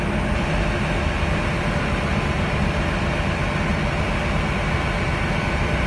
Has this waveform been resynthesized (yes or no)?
no